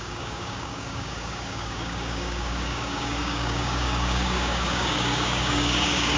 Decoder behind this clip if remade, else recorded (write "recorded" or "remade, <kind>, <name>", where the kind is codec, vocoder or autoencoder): remade, codec, DAC